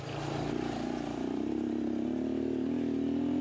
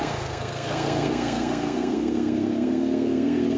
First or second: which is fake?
second